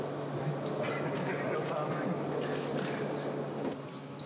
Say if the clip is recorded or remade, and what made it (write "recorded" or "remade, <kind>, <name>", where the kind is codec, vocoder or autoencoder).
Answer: recorded